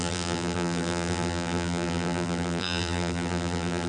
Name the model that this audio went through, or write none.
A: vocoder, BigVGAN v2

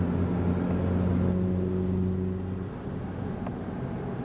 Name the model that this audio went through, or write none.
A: none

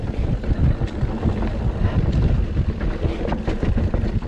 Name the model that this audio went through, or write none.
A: none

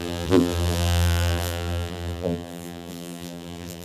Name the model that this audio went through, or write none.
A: vocoder, BigVGAN v2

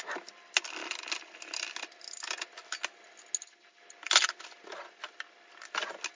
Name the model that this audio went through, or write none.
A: none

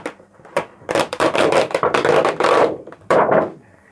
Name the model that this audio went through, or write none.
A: vocoder, BigVGAN v2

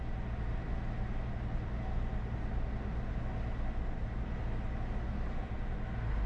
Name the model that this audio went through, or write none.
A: none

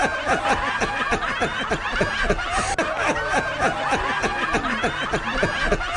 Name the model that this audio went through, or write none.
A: none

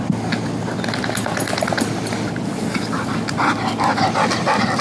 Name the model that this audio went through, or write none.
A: none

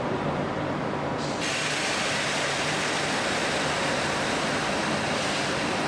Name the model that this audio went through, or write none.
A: vocoder, BigVGAN v2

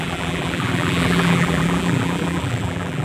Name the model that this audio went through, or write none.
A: vocoder, BigVGAN v2